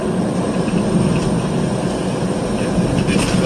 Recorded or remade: recorded